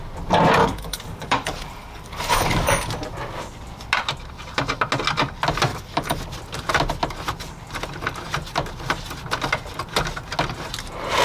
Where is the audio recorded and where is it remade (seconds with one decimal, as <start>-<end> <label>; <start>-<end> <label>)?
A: 0.0-0.6 recorded; 0.6-2.8 remade; 2.8-5.7 recorded; 5.7-6.2 remade; 6.2-11.2 recorded